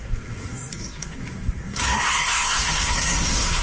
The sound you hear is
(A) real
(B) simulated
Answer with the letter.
B